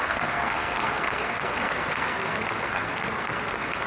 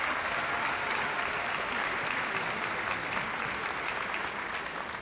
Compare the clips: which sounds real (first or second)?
second